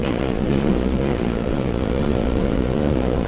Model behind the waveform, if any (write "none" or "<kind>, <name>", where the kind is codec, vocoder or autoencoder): vocoder, Vocos